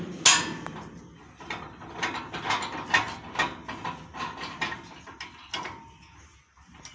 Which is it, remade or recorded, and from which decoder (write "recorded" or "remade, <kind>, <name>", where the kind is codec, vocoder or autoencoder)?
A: recorded